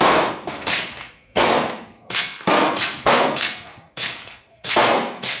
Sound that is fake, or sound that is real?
fake